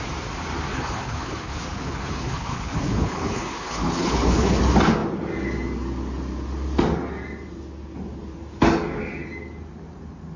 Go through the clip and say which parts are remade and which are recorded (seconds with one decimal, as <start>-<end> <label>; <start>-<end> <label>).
0.0-0.7 recorded; 0.7-4.6 remade; 4.6-10.4 recorded